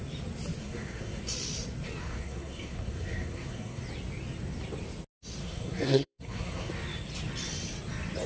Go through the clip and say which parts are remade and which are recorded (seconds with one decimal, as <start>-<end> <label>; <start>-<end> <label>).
0.0-0.6 recorded; 0.6-1.2 remade; 1.2-2.0 recorded; 2.0-3.8 remade; 3.8-5.4 recorded; 5.4-6.7 remade; 6.7-8.3 recorded